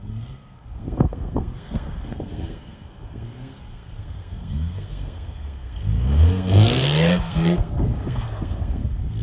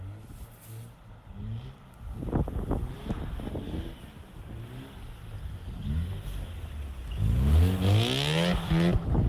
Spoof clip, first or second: first